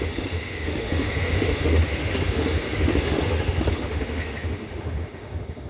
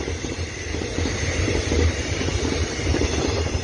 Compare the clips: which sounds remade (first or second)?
first